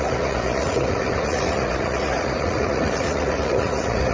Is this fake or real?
fake